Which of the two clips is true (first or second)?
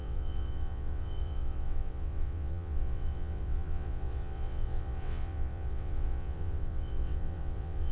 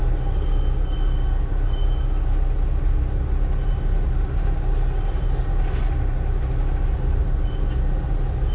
second